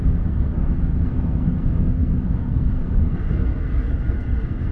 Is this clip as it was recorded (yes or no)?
no